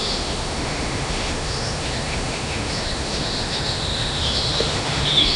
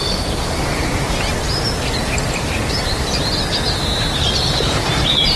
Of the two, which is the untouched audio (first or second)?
second